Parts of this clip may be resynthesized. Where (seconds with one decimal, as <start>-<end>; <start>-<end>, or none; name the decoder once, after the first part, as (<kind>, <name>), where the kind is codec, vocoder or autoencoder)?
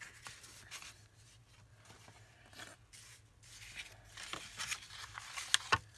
none